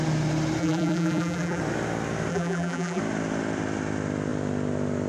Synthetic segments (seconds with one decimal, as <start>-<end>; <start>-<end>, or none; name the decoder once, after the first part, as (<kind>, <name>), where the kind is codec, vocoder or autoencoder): 0.6-1.6 (vocoder, BigVGAN v2); 2.3-3.0